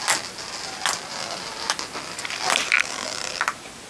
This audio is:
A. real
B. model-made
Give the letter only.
A